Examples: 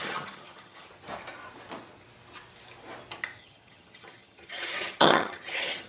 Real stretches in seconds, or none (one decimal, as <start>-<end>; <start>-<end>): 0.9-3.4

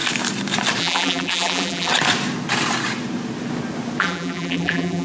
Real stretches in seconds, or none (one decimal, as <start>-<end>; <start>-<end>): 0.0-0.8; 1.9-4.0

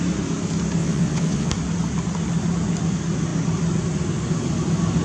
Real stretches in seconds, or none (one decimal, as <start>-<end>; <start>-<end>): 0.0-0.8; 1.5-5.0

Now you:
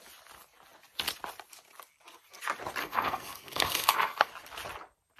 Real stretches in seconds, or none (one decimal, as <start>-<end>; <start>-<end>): 0.0-2.8; 4.3-5.2

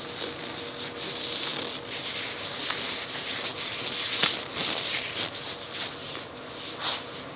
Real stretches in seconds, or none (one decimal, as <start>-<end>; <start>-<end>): 3.5-6.8

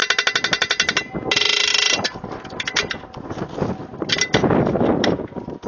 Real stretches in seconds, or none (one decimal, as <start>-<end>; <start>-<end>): 0.0-5.7

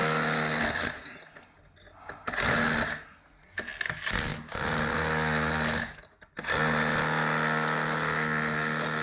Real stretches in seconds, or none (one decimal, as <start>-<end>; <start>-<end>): 0.0-9.0

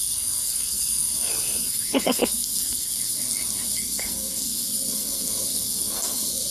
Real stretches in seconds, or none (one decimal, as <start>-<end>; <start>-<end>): none